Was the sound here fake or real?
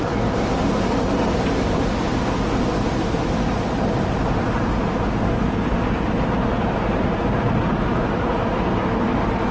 real